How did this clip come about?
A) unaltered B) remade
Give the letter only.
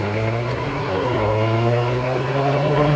B